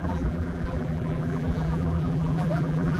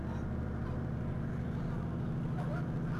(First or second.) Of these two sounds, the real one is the second